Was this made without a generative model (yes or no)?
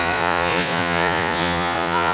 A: no